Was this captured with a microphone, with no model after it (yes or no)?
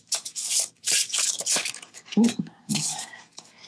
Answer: no